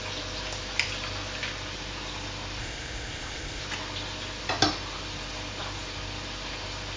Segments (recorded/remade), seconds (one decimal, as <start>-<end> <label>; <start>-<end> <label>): 0.0-2.6 recorded; 2.6-3.6 remade; 3.6-7.0 recorded